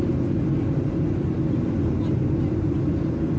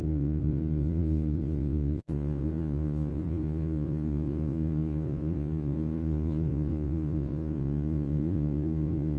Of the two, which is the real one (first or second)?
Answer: first